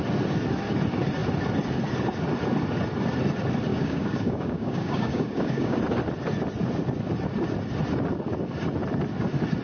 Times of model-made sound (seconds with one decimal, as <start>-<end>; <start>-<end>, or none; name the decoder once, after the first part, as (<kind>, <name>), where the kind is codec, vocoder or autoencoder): 3.7-5.8 (codec, DAC)